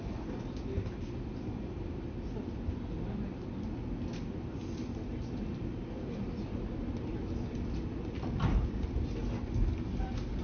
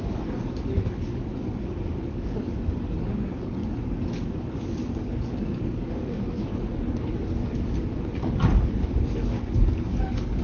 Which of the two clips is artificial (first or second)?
second